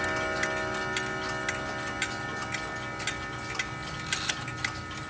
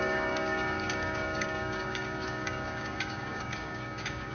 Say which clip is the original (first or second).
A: first